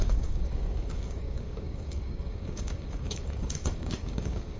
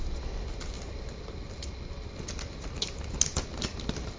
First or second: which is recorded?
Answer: second